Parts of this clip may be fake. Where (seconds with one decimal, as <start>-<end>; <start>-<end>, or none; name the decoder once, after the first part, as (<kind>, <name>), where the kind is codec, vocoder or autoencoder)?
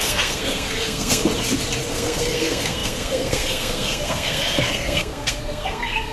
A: 0.0-1.2 (codec, SNAC); 1.9-6.1